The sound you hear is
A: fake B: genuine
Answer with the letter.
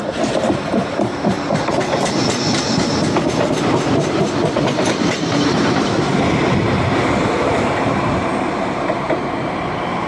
A